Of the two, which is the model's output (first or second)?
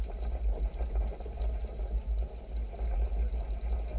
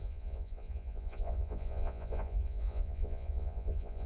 second